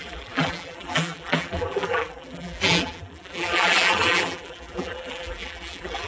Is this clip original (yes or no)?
no